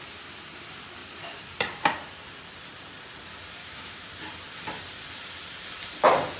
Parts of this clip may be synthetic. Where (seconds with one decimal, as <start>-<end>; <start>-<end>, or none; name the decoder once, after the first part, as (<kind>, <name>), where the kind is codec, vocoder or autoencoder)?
3.6-4.1 (autoencoder, DAC-VAE)